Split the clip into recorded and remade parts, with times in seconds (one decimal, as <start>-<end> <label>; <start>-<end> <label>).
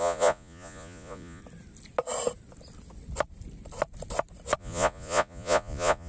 0.0-1.4 remade; 1.4-4.6 recorded; 4.6-6.1 remade